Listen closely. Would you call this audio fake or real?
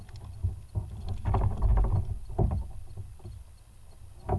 real